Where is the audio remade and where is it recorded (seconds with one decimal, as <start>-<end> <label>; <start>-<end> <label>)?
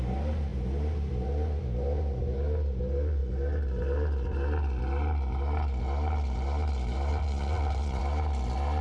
0.0-7.1 recorded; 7.1-8.0 remade; 8.0-8.8 recorded